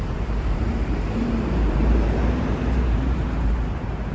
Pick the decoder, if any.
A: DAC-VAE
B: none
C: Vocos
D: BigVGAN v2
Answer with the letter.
D